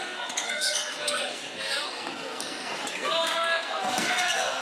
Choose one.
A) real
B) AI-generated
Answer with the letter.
B